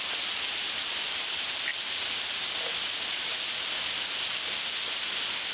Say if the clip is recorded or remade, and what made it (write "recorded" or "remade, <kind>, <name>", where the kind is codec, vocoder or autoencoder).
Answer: recorded